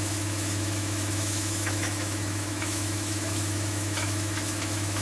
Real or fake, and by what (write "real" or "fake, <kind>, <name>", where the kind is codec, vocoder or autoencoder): fake, autoencoder, DAC-VAE